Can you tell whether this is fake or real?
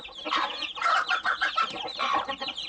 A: real